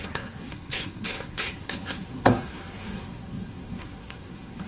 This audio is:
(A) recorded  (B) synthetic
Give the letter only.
B